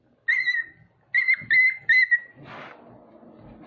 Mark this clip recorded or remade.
recorded